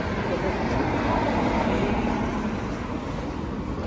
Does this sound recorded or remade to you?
recorded